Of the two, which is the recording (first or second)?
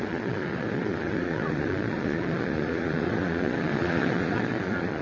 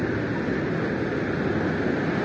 second